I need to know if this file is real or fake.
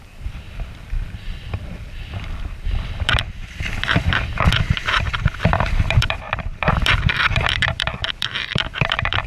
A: fake